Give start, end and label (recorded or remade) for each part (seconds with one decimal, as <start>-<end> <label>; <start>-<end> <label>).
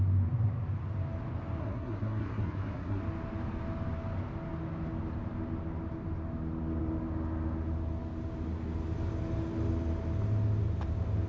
0.0-1.6 recorded; 1.6-3.0 remade; 3.0-11.3 recorded